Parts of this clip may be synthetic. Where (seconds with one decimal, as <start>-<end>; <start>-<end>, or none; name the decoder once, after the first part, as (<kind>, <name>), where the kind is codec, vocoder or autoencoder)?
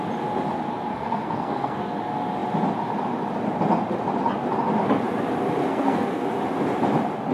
0.9-1.9 (codec, SNAC); 5.6-6.3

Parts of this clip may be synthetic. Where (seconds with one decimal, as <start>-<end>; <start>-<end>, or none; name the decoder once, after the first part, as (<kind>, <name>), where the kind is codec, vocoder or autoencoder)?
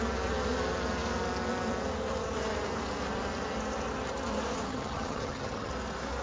4.7-5.7 (vocoder, HiFi-GAN)